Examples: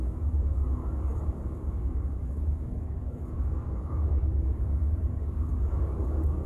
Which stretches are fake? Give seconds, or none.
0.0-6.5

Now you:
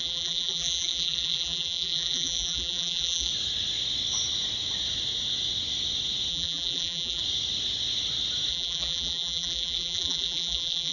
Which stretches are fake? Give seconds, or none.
0.0-3.3; 6.3-7.2; 8.5-10.9